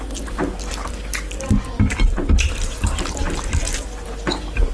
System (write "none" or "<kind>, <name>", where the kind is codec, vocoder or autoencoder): none